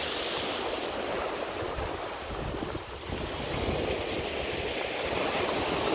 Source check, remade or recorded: recorded